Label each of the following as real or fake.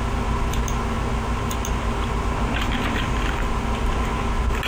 real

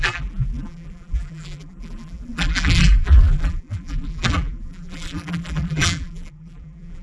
fake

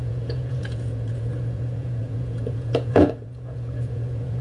fake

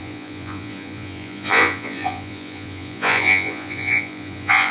fake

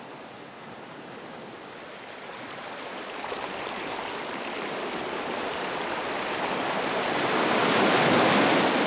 real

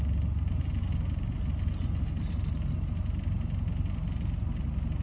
real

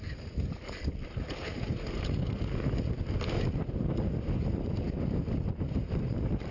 real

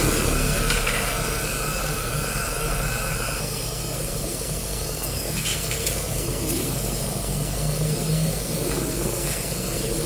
fake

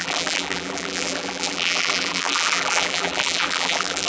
fake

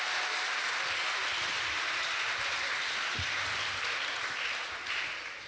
real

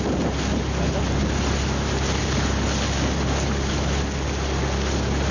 real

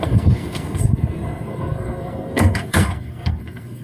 fake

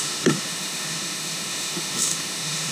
fake